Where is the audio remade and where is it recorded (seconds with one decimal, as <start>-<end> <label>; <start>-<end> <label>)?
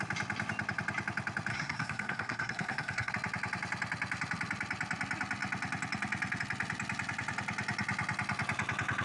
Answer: 0.0-1.5 recorded; 1.5-3.1 remade; 3.1-9.0 recorded